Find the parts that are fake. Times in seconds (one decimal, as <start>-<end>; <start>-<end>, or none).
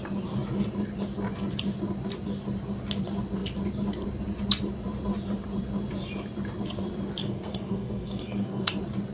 7.2-8.7